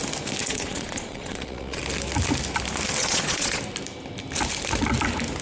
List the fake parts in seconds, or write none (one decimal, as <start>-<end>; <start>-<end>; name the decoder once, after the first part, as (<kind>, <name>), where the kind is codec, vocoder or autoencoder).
0.4-1.8 (vocoder, Vocos); 3.0-3.6